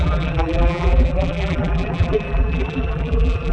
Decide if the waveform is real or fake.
fake